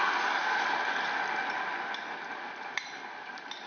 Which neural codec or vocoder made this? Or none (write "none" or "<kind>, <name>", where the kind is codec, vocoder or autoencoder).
none